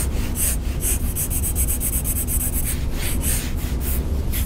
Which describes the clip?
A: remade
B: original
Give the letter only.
B